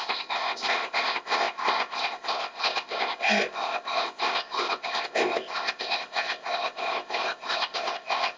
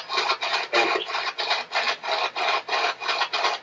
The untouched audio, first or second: second